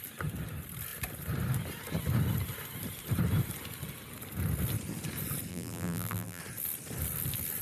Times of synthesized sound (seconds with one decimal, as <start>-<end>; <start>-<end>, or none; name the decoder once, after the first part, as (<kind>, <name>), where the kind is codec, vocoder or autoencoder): 5.5-6.4 (vocoder, BigVGAN v2)